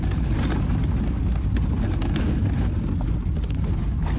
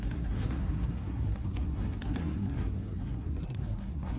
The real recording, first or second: first